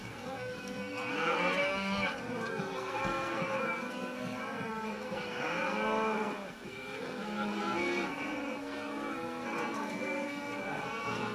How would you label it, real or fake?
fake